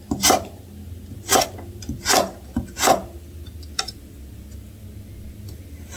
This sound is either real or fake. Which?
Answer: real